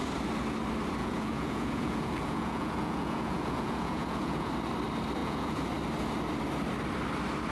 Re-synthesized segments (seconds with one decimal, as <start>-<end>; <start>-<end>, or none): 1.0-4.5; 5.2-5.7